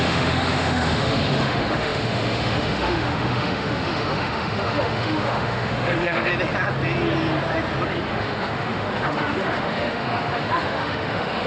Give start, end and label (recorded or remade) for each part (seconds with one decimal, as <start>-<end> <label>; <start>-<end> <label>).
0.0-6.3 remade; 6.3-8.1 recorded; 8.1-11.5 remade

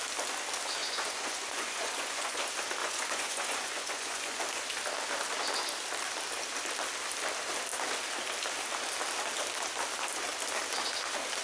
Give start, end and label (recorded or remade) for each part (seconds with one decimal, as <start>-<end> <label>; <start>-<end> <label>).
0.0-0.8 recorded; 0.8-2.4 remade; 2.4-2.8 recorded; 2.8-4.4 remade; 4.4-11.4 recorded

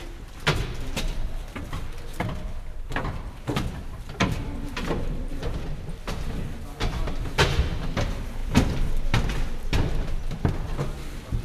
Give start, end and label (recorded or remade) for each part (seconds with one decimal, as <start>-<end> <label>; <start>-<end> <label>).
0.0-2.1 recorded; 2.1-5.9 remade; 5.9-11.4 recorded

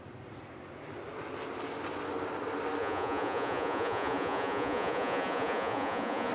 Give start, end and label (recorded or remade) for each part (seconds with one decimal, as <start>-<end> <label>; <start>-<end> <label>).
0.0-2.8 recorded; 2.8-6.3 remade

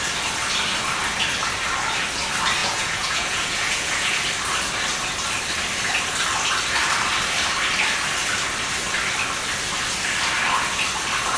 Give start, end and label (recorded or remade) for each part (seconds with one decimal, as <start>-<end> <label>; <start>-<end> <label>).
0.0-2.6 recorded; 2.6-4.2 remade; 4.2-11.4 recorded

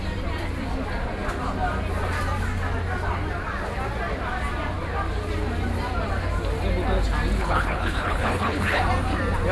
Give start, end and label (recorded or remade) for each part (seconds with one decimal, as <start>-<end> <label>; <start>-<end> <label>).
0.0-7.4 recorded; 7.4-8.8 remade; 8.8-9.5 recorded